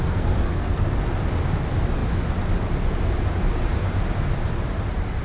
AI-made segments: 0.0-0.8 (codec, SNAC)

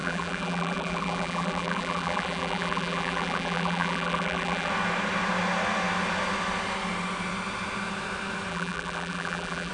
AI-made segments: 0.0-4.7 (vocoder, BigVGAN v2); 8.5-9.7

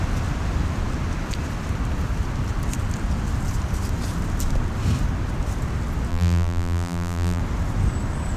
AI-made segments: 6.1-7.4 (vocoder, BigVGAN v2)